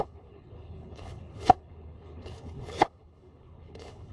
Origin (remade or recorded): remade